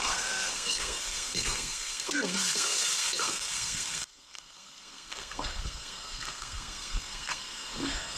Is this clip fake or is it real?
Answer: fake